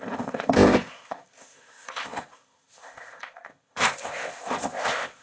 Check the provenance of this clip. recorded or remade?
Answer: remade